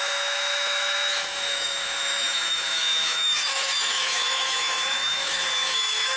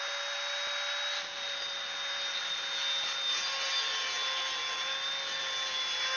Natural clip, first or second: second